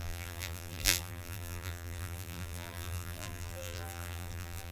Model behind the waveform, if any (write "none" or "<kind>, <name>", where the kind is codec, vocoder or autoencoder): vocoder, BigVGAN v2